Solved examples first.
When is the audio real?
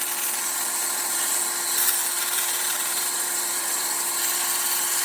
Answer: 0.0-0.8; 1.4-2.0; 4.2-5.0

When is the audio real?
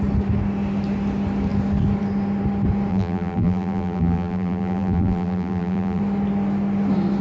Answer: 0.0-2.9; 6.0-7.2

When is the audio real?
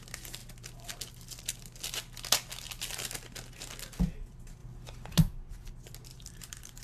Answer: 0.0-6.1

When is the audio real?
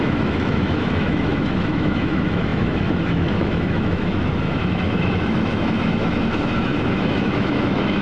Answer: none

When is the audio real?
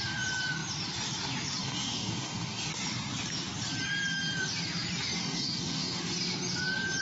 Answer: 0.0-1.6; 2.7-5.2; 6.0-7.0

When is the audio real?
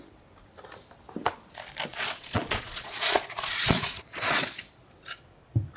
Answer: 0.0-1.9; 4.6-5.8